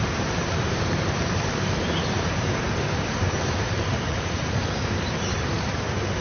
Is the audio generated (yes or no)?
yes